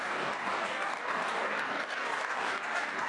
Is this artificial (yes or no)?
yes